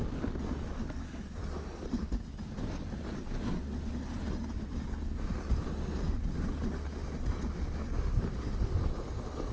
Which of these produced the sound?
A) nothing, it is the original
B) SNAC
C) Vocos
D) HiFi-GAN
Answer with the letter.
A